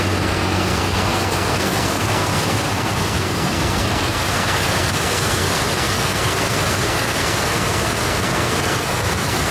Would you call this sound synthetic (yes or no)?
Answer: yes